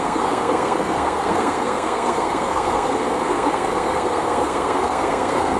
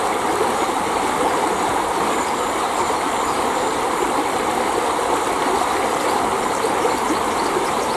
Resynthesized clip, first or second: first